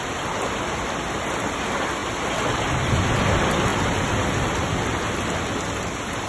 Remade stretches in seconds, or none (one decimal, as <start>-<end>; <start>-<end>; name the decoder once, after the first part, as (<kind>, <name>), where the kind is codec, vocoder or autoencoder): none